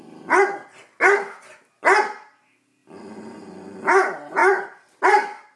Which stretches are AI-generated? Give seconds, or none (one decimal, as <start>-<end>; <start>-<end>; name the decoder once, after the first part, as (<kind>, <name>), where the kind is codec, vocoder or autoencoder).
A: 4.4-5.0 (vocoder, BigVGAN v2)